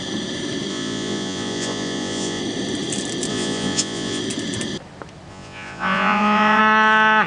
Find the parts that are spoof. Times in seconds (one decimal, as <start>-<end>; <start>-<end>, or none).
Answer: 0.7-2.4; 3.3-4.2; 5.3-6.6